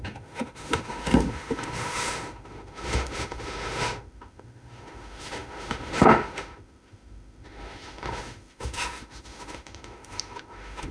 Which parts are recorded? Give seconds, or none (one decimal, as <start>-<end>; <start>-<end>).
none